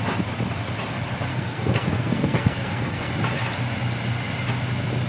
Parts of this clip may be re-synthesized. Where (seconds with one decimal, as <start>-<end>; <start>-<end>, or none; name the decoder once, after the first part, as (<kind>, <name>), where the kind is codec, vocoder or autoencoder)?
1.3-3.1 (codec, SNAC)